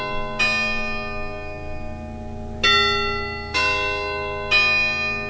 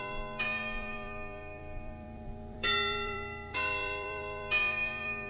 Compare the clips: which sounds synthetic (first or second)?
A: second